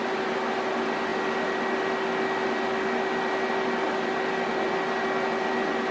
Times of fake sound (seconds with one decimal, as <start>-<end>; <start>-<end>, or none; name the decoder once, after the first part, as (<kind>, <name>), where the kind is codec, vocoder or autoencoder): none